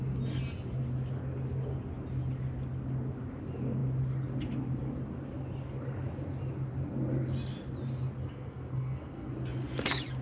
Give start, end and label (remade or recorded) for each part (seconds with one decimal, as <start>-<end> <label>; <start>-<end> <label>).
0.0-8.2 recorded; 8.2-9.3 remade; 9.3-10.2 recorded